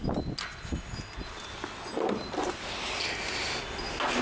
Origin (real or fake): real